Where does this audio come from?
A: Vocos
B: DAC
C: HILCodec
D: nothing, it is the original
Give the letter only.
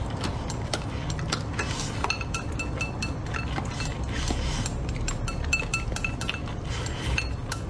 D